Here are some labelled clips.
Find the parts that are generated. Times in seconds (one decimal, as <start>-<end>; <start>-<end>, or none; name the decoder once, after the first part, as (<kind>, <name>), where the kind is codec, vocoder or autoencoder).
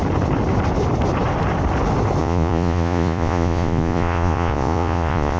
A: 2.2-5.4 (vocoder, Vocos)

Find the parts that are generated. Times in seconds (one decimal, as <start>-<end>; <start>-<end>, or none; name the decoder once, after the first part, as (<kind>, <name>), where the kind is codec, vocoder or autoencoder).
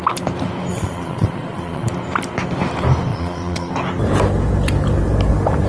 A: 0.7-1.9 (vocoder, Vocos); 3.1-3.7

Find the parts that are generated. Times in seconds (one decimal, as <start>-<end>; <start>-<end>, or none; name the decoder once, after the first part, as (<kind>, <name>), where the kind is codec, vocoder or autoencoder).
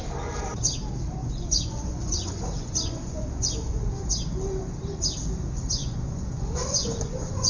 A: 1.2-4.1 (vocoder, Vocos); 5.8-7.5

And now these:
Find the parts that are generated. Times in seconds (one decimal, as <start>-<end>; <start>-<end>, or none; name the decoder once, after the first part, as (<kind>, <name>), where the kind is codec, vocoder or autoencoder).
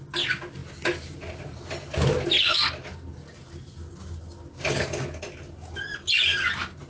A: none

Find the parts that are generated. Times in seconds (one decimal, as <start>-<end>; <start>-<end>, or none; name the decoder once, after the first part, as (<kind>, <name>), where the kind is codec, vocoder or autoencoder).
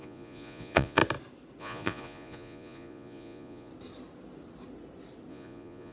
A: 0.0-1.0 (vocoder, Vocos); 1.6-3.7; 5.3-5.9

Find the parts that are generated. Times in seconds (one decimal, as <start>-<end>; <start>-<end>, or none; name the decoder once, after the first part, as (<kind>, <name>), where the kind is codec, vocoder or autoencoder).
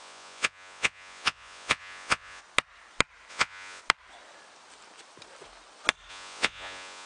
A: 0.0-2.4 (vocoder, Vocos); 3.3-3.8; 6.1-7.1